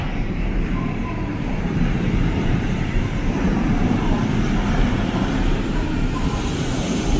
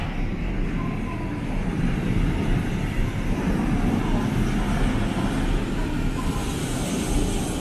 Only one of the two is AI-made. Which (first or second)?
first